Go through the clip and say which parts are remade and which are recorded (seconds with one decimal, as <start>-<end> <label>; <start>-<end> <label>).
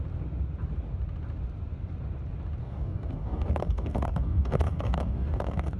0.0-2.6 recorded; 2.6-5.8 remade